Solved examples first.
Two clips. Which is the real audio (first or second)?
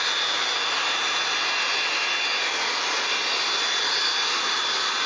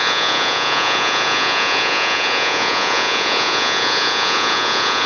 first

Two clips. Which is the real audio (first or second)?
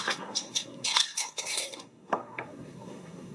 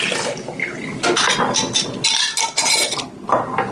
second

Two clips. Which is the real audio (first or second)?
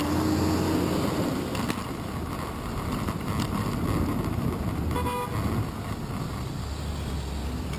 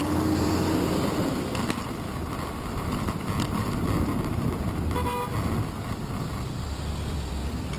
first